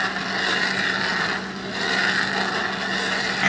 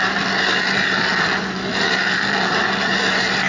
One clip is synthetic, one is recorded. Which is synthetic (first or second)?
second